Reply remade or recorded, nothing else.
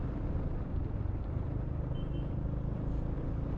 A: recorded